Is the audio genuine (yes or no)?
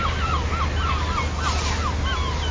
yes